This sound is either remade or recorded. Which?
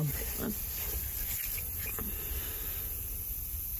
recorded